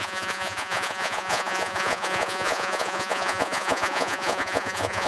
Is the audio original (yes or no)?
no